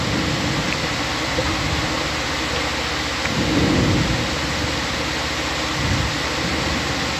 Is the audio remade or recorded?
recorded